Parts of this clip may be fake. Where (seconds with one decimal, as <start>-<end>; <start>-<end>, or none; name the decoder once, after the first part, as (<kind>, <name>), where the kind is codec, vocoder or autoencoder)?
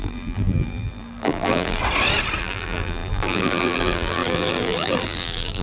0.0-1.8 (vocoder, BigVGAN v2); 2.4-5.6